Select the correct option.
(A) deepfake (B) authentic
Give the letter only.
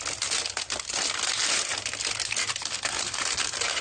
B